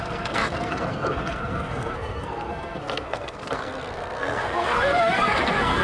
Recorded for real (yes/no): no